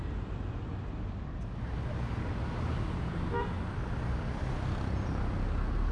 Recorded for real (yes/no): yes